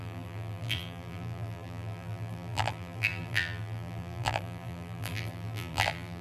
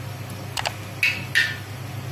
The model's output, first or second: first